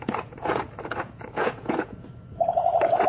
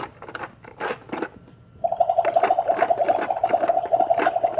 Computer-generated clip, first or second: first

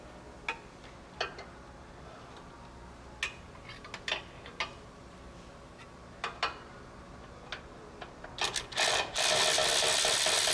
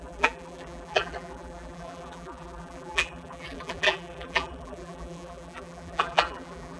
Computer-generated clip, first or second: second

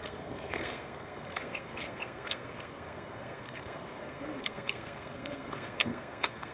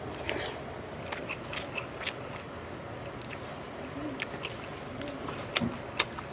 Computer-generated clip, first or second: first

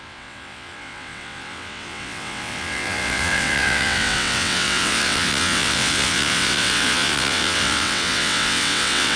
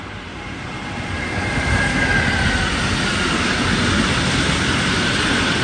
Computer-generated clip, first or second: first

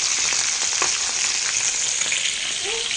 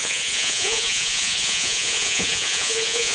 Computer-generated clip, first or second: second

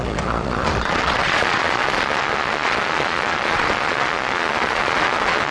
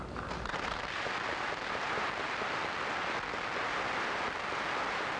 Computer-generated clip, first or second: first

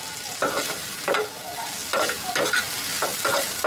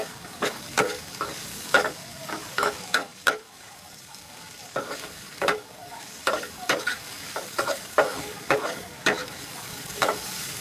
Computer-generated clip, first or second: second